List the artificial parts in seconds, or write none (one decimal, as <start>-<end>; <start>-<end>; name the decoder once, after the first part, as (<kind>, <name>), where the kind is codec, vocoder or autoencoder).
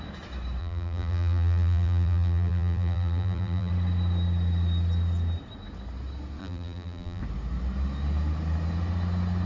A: 0.6-3.7 (vocoder, BigVGAN v2); 6.4-7.2